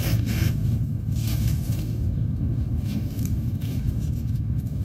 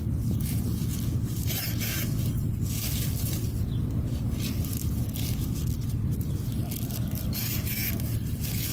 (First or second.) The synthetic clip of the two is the first